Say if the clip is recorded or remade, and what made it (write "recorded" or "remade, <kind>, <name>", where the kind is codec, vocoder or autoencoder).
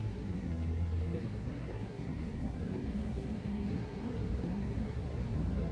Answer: remade, codec, SNAC